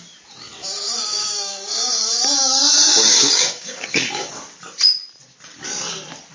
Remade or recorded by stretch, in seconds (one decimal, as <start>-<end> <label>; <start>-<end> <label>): 0.0-0.6 recorded; 0.6-4.3 remade; 4.3-6.3 recorded